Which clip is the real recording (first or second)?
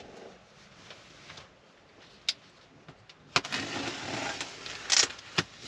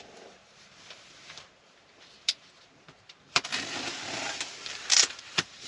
first